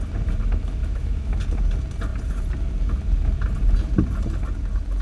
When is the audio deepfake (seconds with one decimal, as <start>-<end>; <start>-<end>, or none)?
0.8-1.4